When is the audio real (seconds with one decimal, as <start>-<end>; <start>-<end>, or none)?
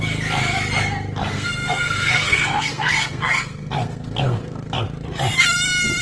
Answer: 0.0-1.2; 4.8-6.0